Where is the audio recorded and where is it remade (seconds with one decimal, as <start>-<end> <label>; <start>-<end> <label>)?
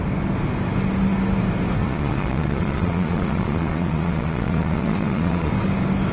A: 0.0-1.8 recorded; 1.8-5.5 remade; 5.5-6.1 recorded